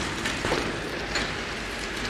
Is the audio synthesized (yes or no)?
no